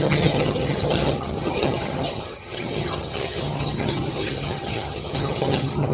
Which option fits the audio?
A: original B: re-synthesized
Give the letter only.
B